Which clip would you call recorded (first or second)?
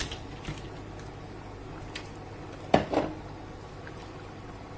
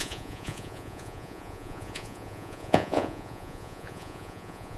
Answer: first